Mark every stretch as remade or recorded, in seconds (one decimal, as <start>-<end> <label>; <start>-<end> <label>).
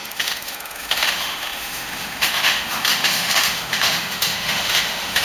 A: 0.0-5.2 remade